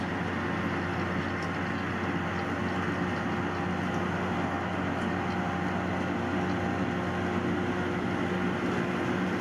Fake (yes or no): no